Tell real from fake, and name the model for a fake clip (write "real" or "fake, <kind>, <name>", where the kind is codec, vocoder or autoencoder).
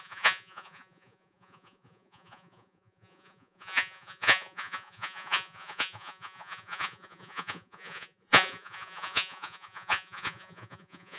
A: fake, vocoder, Vocos